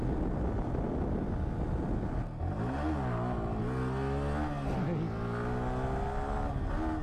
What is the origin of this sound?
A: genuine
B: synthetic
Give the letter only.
A